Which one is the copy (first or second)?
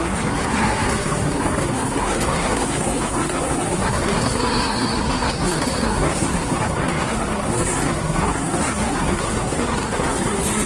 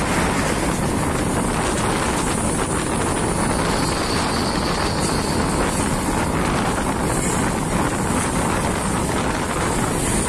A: first